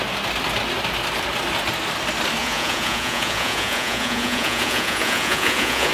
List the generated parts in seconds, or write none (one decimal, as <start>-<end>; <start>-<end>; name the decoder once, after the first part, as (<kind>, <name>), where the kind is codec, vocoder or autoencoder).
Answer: 2.4-5.9 (vocoder, Vocos)

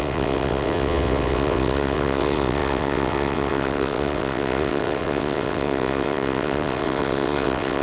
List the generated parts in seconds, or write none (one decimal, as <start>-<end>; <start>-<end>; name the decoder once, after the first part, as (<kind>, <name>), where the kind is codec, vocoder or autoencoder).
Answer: 0.0-7.8 (vocoder, WaveNeXt)

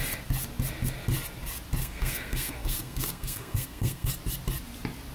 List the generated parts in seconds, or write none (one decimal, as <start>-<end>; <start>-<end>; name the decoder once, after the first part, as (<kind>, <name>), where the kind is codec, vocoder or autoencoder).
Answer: 1.8-4.1 (codec, SNAC)

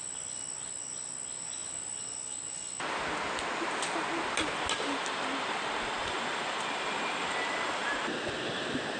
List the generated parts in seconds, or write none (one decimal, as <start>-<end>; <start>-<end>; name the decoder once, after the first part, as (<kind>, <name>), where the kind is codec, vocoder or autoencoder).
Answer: none

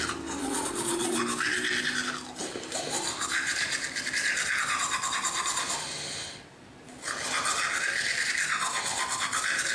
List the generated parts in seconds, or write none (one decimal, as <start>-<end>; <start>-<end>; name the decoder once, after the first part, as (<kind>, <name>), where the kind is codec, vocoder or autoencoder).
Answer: 0.4-1.2 (vocoder, Vocos)

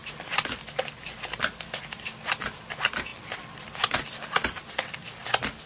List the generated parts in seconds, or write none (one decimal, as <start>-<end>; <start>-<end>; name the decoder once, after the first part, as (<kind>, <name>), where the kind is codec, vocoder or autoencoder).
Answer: none